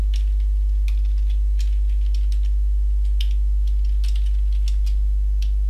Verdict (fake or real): real